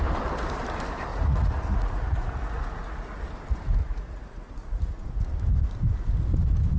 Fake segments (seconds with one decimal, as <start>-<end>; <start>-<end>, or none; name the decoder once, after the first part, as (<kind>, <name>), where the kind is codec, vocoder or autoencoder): 1.1-3.2 (vocoder, Vocos); 3.8-5.2